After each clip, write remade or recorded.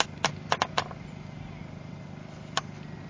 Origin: recorded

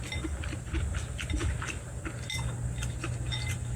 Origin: recorded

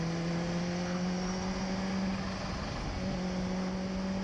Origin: recorded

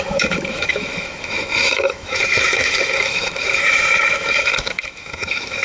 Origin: remade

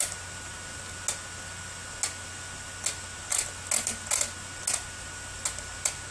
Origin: recorded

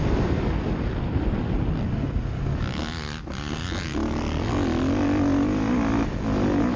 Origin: recorded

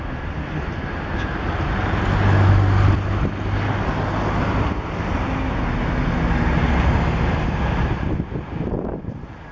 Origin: recorded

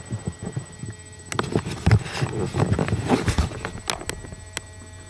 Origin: recorded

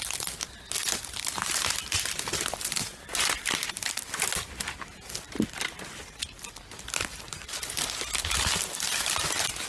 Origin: recorded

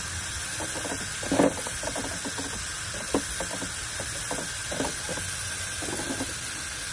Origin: recorded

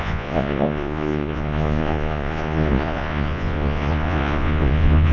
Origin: remade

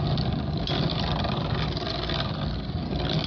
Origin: recorded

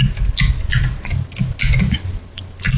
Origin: recorded